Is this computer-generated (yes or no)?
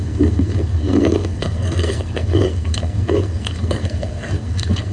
yes